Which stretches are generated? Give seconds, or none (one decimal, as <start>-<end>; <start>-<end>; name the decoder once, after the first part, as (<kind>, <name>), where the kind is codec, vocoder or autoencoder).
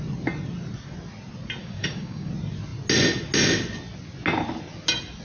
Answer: 1.6-2.3 (codec, DAC)